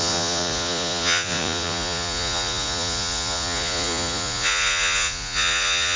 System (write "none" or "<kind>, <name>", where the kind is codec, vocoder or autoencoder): vocoder, Vocos